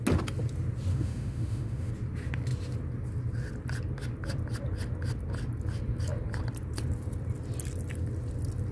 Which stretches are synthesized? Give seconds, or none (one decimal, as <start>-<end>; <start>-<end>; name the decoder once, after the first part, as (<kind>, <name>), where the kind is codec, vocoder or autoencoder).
0.9-1.9 (autoencoder, DAC-VAE)